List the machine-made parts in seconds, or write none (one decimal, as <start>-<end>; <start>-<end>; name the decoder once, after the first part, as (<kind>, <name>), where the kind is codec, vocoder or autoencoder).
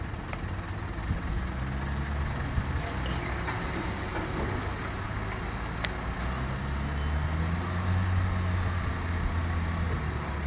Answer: none